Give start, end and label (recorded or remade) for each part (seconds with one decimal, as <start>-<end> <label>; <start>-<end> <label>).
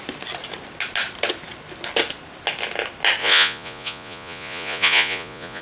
0.0-3.2 recorded; 3.2-5.6 remade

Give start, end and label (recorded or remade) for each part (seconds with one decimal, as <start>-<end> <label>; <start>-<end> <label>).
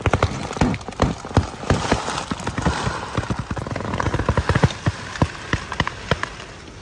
0.0-6.8 recorded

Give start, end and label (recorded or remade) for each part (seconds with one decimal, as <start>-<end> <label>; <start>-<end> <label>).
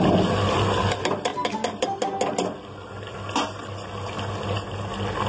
0.0-5.3 recorded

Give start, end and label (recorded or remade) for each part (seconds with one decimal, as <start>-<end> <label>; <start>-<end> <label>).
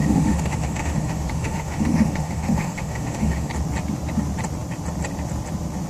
0.0-3.5 remade; 3.5-5.9 recorded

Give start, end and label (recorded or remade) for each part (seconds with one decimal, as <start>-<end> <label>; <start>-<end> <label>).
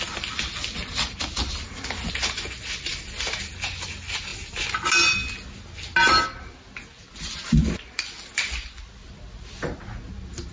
0.0-10.5 recorded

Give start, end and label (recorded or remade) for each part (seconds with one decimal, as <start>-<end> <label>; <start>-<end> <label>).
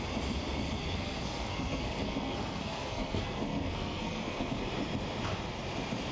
0.0-0.8 recorded; 0.8-4.5 remade; 4.5-6.1 recorded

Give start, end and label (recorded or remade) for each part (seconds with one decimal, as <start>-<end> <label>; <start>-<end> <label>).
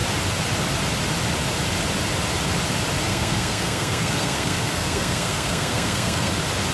0.0-3.1 recorded; 3.1-6.3 remade; 6.3-6.7 recorded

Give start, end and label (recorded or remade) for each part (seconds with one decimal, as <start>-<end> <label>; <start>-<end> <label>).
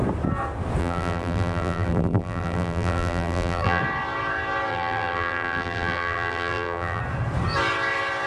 0.0-0.8 recorded; 0.8-3.8 remade; 3.8-4.7 recorded; 4.7-7.0 remade; 7.0-8.3 recorded